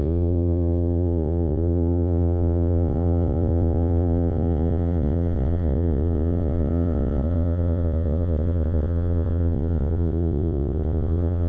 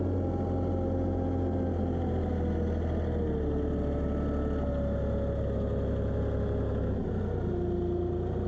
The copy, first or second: first